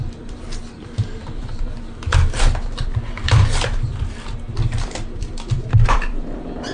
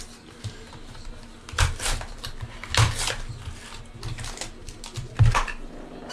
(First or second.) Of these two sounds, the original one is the second